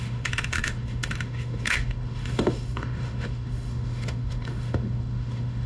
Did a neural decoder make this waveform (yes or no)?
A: yes